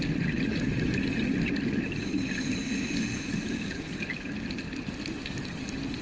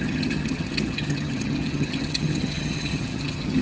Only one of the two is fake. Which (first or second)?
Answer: second